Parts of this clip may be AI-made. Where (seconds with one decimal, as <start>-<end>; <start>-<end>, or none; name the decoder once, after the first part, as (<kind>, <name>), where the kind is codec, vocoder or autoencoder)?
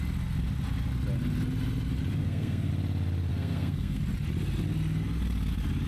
2.2-2.7 (codec, SNAC); 3.3-4.0